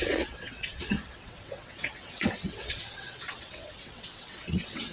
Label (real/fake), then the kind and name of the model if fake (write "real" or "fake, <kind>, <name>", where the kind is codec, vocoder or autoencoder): fake, vocoder, WaveNeXt